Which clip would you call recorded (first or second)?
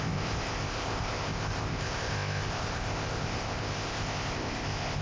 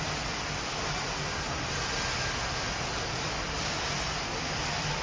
second